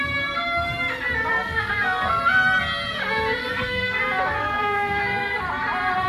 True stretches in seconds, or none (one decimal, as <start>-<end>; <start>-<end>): 0.0-1.3; 2.2-3.4; 4.0-4.4; 5.4-6.1